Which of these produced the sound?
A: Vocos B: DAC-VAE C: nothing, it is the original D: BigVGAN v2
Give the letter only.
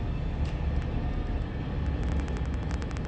C